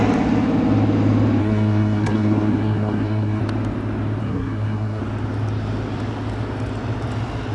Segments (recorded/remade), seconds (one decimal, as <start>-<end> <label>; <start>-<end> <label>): 0.0-1.4 recorded; 1.4-3.4 remade; 3.4-4.2 recorded; 4.2-5.0 remade; 5.0-7.5 recorded